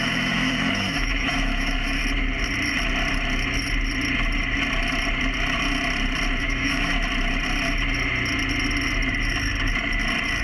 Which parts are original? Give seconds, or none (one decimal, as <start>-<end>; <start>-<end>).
2.0-6.4; 6.9-10.4

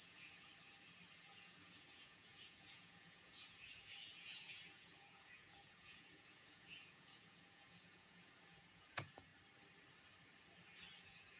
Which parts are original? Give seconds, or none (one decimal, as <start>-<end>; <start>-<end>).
0.5-1.1; 9.3-11.0

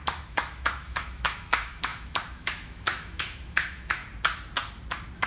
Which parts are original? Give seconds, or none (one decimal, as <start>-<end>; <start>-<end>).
4.0-5.3

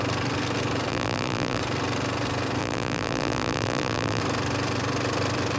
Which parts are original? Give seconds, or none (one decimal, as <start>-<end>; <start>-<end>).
0.0-0.9; 1.6-2.6; 4.2-5.6

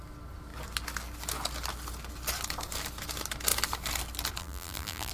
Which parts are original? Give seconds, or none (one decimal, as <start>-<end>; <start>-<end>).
0.0-4.4

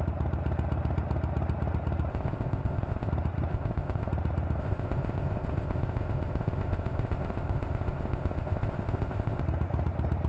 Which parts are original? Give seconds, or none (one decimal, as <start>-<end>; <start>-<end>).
0.0-2.1; 3.1-3.5; 4.1-4.6; 9.4-10.3

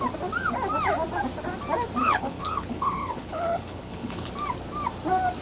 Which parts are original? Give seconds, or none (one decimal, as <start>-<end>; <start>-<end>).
0.0-2.0; 4.3-5.4

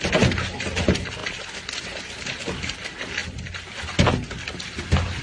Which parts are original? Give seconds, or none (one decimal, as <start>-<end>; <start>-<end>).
0.0-5.2